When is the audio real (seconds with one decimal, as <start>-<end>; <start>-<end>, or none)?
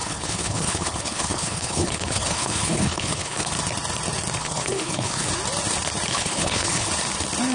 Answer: 3.5-4.4; 5.3-6.1; 6.9-7.5